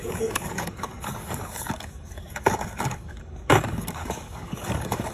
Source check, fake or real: fake